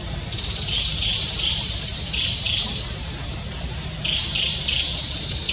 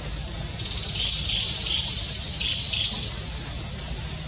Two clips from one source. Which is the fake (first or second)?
first